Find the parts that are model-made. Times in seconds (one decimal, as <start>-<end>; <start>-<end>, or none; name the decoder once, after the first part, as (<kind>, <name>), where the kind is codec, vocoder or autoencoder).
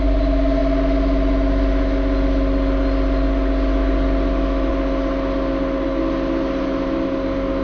none